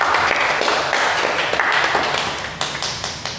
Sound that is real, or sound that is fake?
real